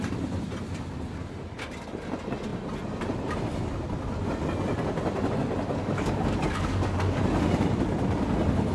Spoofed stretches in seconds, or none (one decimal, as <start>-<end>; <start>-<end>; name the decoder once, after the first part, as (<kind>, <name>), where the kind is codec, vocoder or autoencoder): 5.8-7.2 (codec, DAC)